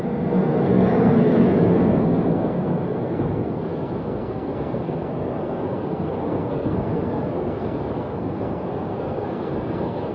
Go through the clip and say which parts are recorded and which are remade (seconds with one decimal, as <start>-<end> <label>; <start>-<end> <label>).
0.0-10.1 remade